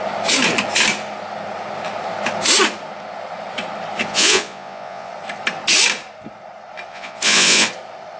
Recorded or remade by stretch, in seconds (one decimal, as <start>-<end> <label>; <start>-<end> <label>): 0.0-4.1 recorded; 4.1-5.1 remade; 5.1-6.9 recorded; 6.9-7.7 remade; 7.7-8.2 recorded

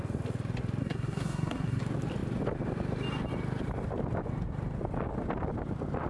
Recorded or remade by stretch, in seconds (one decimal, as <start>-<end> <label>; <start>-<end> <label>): 0.0-0.8 recorded; 0.8-1.8 remade; 1.8-6.1 recorded

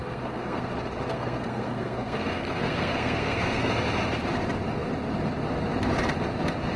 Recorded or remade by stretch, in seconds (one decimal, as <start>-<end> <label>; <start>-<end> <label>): 0.0-0.7 remade; 0.7-1.1 recorded; 1.1-3.7 remade; 3.7-6.8 recorded

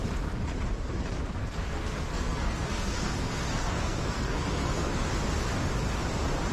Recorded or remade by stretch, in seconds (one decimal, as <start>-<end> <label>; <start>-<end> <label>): 0.0-1.4 recorded; 1.4-5.1 remade; 5.1-6.5 recorded

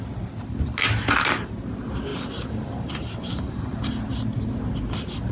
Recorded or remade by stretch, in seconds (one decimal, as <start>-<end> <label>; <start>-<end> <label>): 0.0-2.1 recorded; 2.1-3.9 remade; 3.9-5.3 recorded

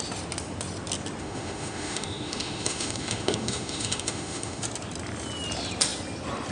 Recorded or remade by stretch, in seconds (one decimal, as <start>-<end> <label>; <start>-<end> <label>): 0.0-1.2 recorded; 1.2-4.6 remade; 4.6-6.5 recorded